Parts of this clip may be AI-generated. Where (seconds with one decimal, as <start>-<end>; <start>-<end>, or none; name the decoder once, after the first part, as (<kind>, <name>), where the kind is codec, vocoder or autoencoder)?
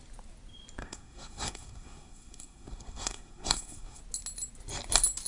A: 0.8-4.0 (codec, SNAC)